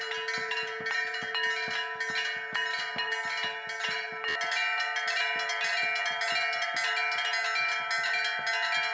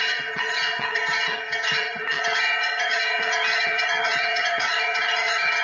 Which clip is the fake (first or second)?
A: second